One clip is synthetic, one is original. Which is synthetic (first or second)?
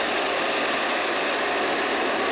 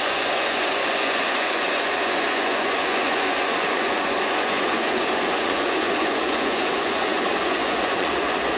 second